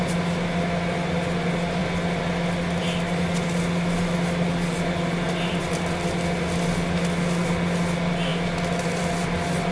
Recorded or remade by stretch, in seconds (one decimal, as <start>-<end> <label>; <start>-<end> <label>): 0.0-9.7 recorded